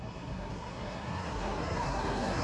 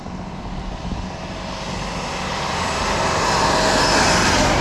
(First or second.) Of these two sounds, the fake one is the first